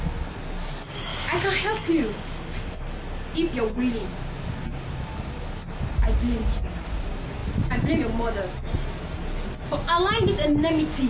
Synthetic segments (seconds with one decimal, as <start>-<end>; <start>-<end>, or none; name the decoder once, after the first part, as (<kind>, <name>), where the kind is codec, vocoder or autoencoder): 1.1-1.7 (autoencoder, DAC-VAE)